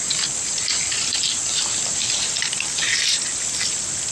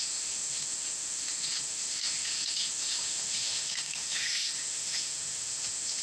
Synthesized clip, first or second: second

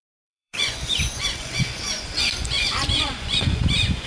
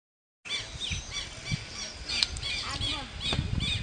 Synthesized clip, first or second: first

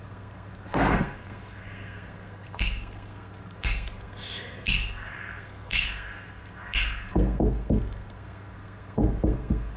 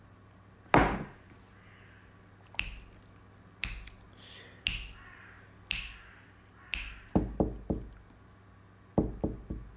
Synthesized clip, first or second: first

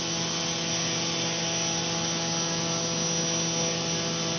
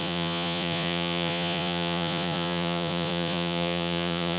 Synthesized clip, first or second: second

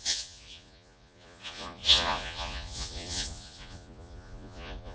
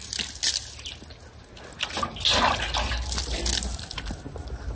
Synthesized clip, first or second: first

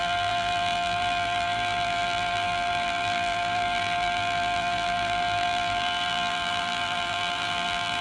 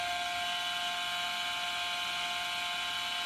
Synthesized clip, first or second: first